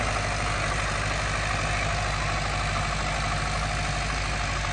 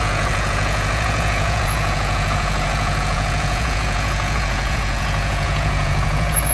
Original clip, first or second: first